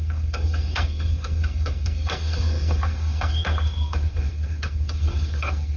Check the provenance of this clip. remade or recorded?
remade